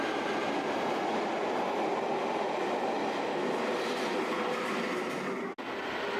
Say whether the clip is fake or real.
real